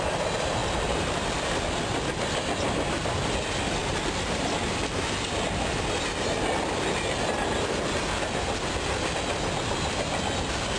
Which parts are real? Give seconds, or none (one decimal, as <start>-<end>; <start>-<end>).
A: 0.0-0.6; 1.4-3.8; 4.6-10.8